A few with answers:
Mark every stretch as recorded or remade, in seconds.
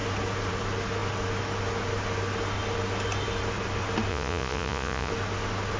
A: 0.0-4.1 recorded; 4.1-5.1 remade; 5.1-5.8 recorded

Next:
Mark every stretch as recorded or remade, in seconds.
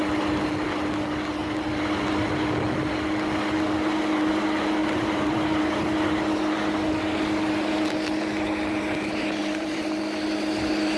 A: 0.0-4.8 recorded; 4.8-5.6 remade; 5.6-9.4 recorded; 9.4-10.0 remade; 10.0-11.0 recorded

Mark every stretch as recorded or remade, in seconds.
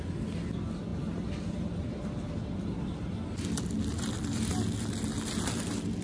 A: 0.0-0.9 recorded; 0.9-4.5 remade; 4.5-6.0 recorded